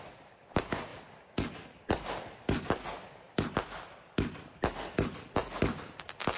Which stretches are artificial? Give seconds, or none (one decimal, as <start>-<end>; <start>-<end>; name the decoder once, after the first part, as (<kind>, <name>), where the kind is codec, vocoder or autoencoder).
none